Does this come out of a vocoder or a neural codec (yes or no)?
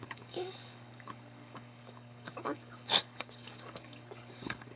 yes